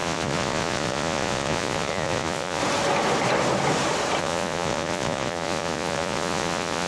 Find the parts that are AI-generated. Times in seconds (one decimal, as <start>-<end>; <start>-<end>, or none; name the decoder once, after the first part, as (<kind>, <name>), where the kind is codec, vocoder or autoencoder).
0.0-2.6 (vocoder, Vocos); 4.2-6.9